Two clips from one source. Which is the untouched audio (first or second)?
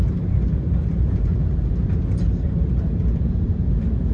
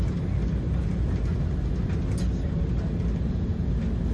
second